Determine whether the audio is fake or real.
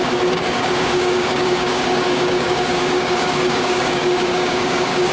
fake